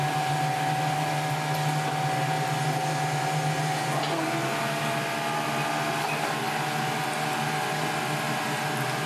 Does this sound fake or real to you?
real